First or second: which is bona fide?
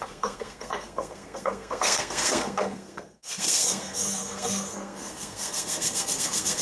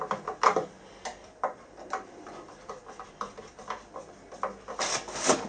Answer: second